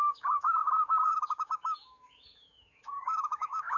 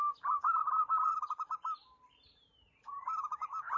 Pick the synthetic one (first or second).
first